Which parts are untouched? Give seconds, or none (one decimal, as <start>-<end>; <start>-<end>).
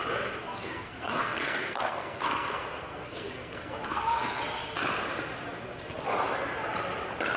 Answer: 0.0-0.4; 4.4-7.4